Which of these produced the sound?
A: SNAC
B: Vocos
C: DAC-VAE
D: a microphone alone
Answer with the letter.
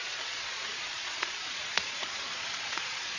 B